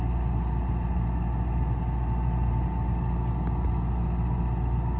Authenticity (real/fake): real